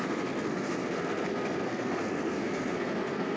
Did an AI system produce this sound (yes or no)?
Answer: yes